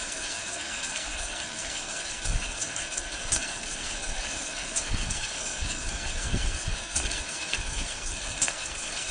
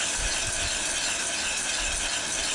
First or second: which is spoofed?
first